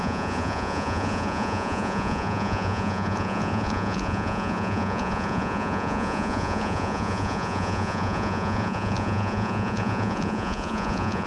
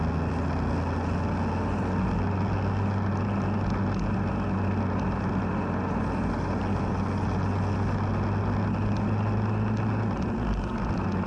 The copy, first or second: first